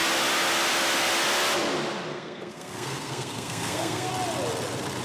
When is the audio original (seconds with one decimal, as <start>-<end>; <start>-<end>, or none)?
0.0-2.1; 4.1-5.0